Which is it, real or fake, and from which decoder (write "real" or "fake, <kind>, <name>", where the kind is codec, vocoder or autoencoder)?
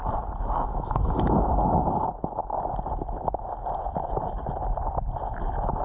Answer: real